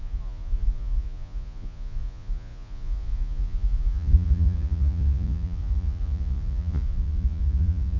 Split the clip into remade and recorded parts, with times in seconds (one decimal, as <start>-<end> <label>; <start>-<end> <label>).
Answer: 0.0-8.0 remade